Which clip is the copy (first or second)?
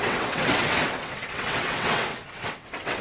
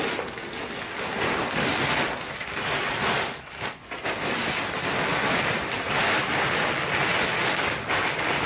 first